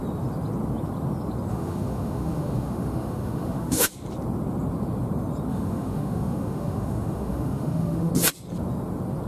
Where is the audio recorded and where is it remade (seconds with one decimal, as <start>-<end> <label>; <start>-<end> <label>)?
0.0-1.5 recorded; 1.5-3.9 remade; 3.9-5.5 recorded; 5.5-8.1 remade; 8.1-9.3 recorded